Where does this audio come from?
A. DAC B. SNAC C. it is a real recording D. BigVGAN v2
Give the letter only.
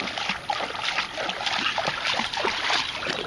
D